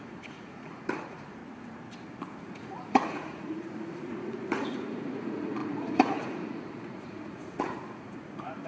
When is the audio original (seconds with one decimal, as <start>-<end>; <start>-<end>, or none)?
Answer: 1.4-2.4